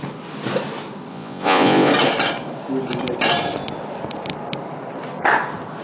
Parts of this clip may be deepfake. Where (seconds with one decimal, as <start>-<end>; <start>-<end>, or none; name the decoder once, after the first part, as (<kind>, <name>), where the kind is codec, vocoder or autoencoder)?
1.1-1.9 (vocoder, Vocos)